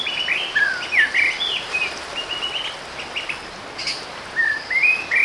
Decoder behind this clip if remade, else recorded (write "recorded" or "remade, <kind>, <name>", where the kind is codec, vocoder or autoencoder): recorded